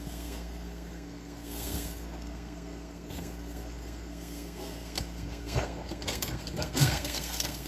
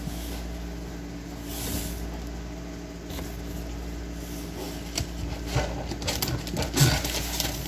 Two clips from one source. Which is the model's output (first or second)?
first